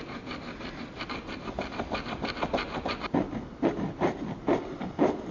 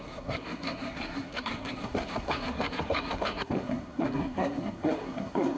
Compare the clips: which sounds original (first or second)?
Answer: first